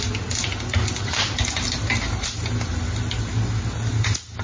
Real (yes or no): yes